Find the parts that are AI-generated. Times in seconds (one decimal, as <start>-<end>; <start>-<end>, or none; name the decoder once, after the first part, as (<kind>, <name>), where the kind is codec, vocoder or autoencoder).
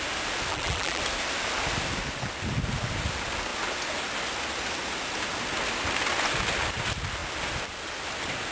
0.5-1.0 (vocoder, BigVGAN v2)